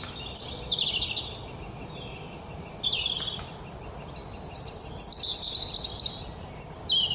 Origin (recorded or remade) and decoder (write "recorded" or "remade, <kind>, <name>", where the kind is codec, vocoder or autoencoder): recorded